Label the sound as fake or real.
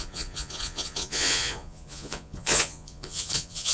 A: fake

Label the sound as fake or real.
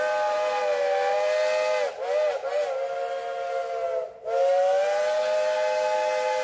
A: real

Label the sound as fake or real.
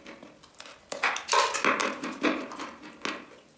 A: real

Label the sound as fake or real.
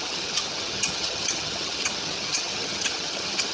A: fake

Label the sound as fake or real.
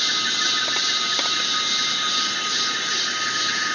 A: real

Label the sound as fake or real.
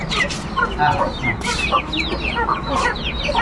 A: real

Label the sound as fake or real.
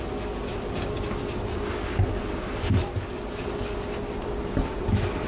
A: real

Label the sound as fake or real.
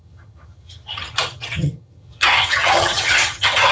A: fake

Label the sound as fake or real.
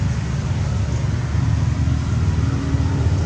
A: real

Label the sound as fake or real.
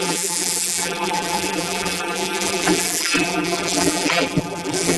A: fake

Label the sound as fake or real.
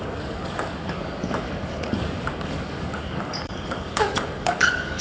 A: fake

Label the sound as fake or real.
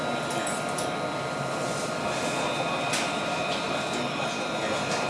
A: real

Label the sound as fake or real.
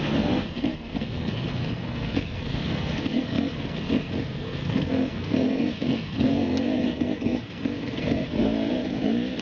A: fake